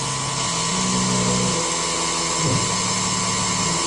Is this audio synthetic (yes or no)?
no